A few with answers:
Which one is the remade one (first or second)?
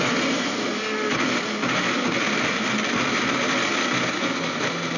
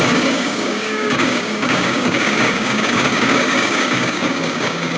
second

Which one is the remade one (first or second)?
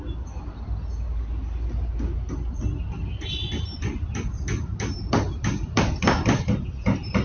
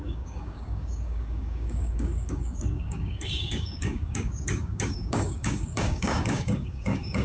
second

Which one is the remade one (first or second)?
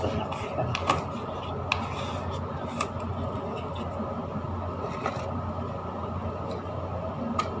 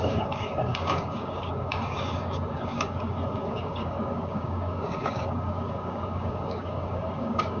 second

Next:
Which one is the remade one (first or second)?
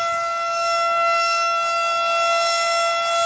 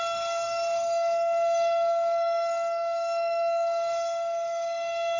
second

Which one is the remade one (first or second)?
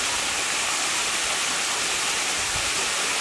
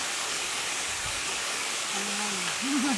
second